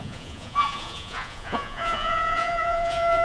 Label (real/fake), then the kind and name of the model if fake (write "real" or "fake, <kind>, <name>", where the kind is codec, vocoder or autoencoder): fake, vocoder, Vocos